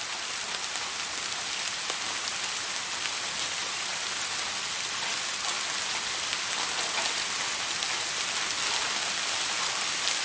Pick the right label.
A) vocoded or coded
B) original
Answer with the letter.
B